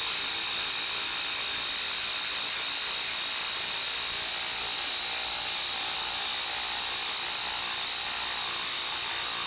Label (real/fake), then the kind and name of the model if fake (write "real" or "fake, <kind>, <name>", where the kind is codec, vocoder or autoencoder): real